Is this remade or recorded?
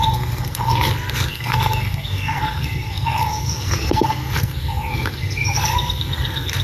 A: remade